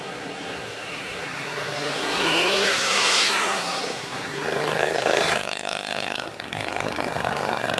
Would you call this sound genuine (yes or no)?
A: no